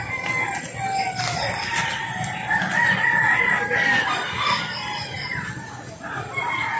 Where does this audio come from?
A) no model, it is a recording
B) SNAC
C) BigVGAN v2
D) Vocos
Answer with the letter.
A